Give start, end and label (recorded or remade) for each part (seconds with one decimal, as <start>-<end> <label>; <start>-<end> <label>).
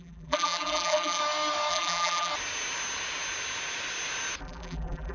0.0-1.2 remade; 1.2-1.7 recorded; 1.7-2.3 remade; 2.3-4.4 recorded; 4.4-5.1 remade